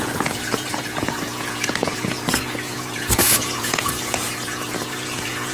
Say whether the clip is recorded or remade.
remade